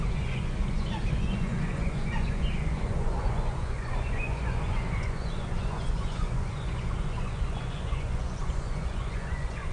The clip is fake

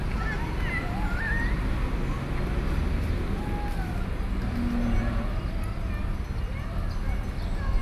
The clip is real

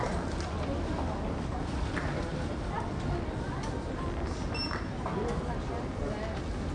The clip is real